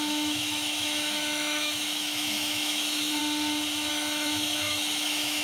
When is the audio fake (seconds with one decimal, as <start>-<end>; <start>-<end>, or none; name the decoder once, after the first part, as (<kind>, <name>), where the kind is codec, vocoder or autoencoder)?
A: 0.0-3.2 (autoencoder, DAC-VAE); 3.9-5.4